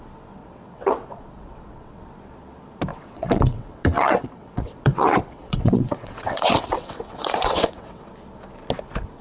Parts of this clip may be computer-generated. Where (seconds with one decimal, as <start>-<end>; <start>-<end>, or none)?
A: 0.4-2.0; 2.9-8.1